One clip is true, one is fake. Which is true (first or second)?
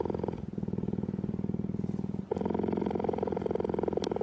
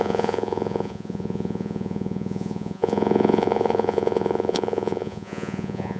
first